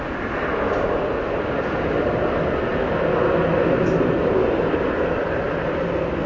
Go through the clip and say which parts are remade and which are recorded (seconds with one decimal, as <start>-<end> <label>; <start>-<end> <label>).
0.0-6.3 recorded